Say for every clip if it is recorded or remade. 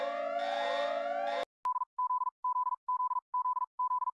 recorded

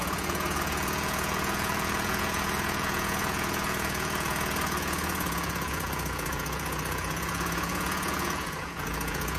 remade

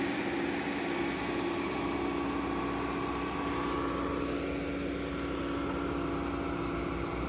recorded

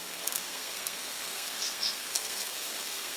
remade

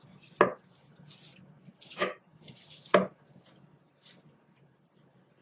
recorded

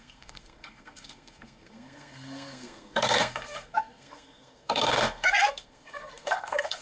remade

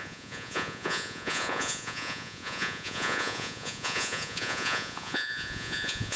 remade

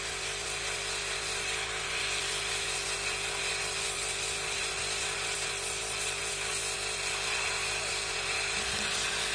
recorded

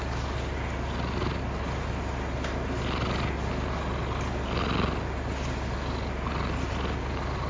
recorded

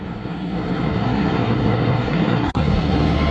remade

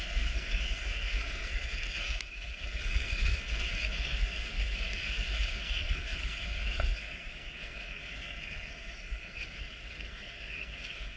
remade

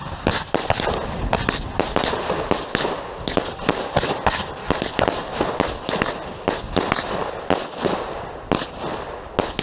recorded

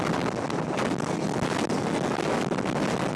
recorded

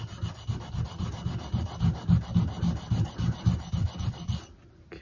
recorded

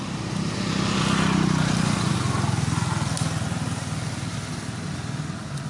recorded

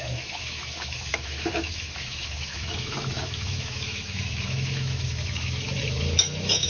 remade